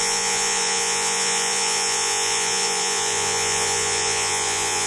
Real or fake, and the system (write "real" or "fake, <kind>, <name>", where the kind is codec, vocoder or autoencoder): fake, vocoder, Vocos